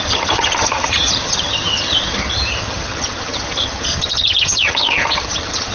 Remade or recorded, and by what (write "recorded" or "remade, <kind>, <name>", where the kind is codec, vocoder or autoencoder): remade, vocoder, HiFi-GAN